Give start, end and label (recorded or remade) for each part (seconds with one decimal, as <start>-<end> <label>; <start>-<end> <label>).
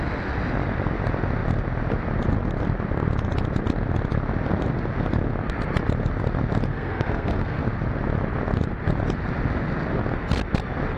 0.0-6.7 recorded; 6.7-7.6 remade; 7.6-11.0 recorded